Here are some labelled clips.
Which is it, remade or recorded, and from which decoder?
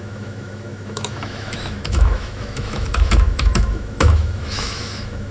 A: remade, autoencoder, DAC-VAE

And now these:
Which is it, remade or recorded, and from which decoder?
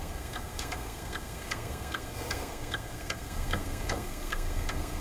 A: remade, codec, SNAC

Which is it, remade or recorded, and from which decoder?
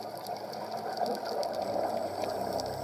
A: recorded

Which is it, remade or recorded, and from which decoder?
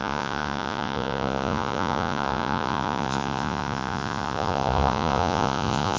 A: remade, vocoder, Vocos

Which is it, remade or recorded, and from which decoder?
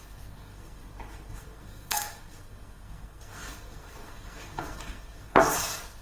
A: remade, codec, SNAC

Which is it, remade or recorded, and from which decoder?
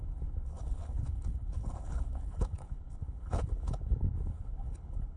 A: remade, codec, HILCodec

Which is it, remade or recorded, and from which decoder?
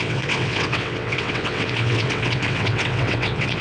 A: remade, vocoder, WaveNeXt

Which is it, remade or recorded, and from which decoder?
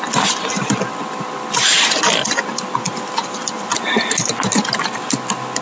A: recorded